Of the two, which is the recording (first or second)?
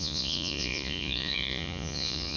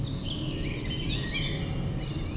second